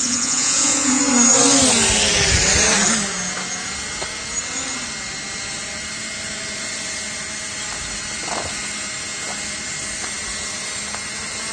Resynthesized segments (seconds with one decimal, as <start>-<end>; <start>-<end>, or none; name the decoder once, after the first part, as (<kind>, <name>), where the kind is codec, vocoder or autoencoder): 0.0-1.0 (vocoder, Vocos)